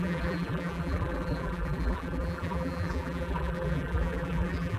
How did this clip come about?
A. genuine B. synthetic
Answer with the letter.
B